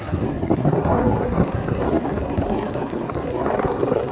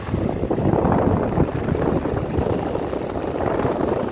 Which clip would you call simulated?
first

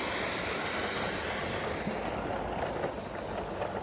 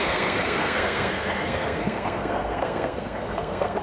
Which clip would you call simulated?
second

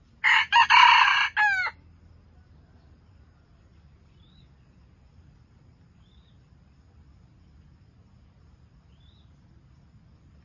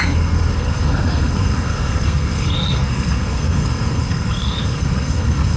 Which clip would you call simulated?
second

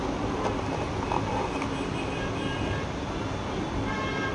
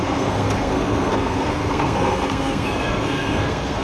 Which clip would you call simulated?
second